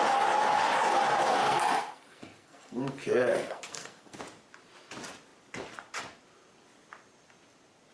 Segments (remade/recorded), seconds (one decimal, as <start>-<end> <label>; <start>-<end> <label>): 0.0-1.4 recorded; 1.4-4.2 remade; 4.2-7.9 recorded